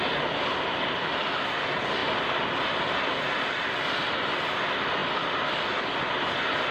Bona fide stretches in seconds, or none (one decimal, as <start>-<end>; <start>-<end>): 0.0-6.7